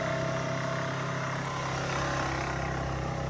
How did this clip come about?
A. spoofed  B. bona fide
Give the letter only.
B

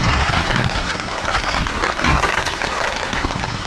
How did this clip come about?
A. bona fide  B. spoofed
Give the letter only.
B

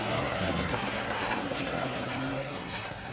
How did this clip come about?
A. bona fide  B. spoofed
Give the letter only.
B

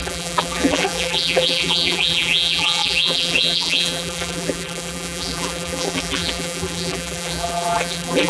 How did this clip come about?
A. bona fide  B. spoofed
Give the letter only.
B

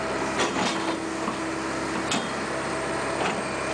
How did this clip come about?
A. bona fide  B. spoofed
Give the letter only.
A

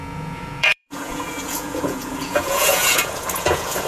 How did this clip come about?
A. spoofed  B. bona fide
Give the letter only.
A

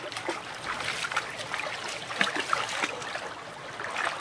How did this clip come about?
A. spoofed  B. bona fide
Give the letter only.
B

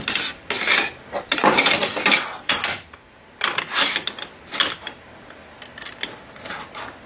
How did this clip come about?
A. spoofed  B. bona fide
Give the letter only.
B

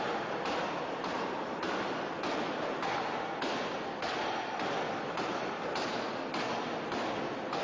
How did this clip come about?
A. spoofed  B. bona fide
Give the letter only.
B